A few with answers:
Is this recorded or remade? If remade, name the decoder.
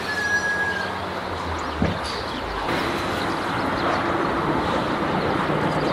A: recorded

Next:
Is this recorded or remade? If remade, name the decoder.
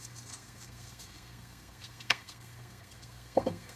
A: remade, codec, SNAC